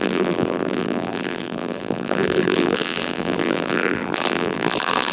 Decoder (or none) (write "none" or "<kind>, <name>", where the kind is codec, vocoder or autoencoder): vocoder, BigVGAN v2